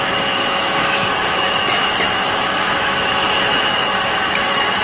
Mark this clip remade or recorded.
remade